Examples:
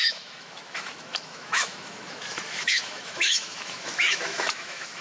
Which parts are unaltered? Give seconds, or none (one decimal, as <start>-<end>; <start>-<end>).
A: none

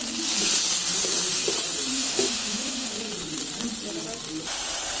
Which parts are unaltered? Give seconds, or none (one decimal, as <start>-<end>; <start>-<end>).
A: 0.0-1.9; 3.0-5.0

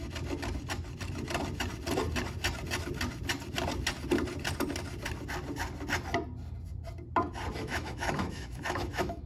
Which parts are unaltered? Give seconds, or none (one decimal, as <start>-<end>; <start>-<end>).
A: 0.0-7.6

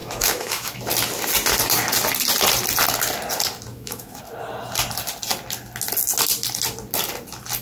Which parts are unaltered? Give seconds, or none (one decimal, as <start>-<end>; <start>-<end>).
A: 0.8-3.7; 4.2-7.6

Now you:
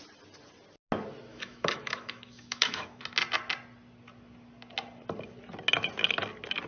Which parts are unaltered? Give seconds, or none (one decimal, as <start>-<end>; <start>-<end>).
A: 0.0-1.3; 3.0-6.7

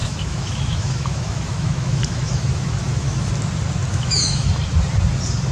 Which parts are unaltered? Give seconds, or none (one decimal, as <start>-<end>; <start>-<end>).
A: 3.3-3.9; 4.5-5.5

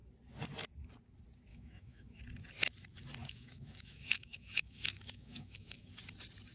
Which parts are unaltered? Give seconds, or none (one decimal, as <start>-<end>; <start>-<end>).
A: 0.0-1.5; 2.2-3.2; 5.9-6.5

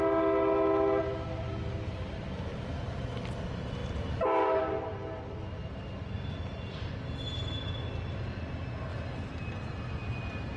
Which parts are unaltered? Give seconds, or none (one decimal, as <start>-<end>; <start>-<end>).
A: 0.0-10.6